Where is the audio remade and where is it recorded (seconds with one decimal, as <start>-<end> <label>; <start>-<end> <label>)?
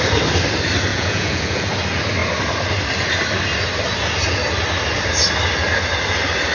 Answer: 0.0-0.9 recorded; 0.9-1.7 remade; 1.7-6.5 recorded